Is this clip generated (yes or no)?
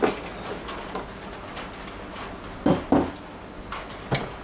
no